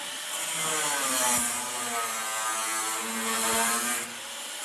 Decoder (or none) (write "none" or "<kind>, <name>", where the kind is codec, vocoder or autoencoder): none